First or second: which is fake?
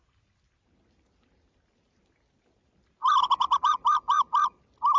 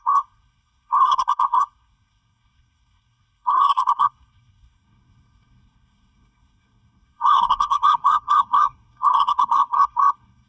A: second